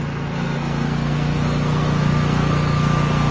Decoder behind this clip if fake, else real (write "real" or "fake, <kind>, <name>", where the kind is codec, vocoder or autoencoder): fake, codec, SNAC